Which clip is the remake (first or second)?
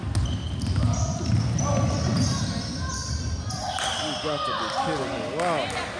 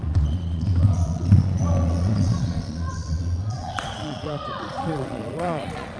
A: second